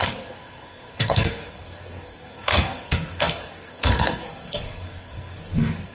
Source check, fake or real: fake